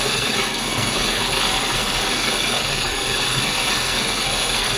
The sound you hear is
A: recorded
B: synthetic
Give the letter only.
B